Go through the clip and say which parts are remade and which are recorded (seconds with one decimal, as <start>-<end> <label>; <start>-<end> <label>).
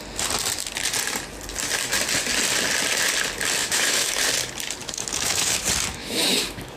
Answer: 0.0-3.6 recorded; 3.6-4.2 remade; 4.2-4.8 recorded; 4.8-5.6 remade; 5.6-6.0 recorded; 6.0-6.8 remade